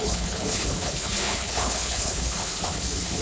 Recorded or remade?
remade